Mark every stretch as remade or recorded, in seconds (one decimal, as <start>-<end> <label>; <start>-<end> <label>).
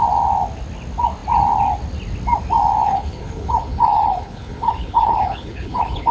0.0-2.8 recorded; 2.8-6.1 remade